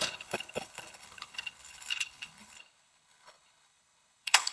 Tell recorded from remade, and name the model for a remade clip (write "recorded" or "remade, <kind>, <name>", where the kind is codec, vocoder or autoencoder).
remade, codec, HILCodec